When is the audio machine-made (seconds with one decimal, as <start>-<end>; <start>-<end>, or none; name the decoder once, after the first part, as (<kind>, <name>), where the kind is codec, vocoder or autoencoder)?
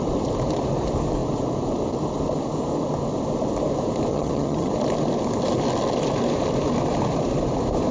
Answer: 4.1-4.7 (vocoder, HiFi-GAN)